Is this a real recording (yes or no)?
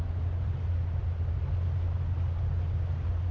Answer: yes